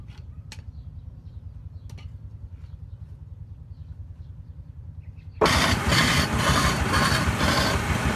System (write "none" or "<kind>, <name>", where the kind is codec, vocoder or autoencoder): none